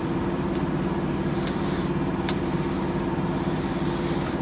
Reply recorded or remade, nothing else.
remade